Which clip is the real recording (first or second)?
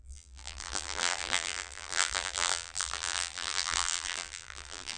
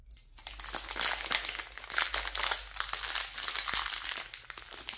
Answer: second